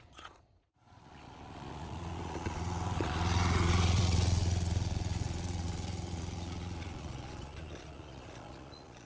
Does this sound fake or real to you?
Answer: fake